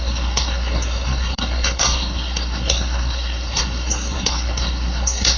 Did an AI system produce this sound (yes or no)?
yes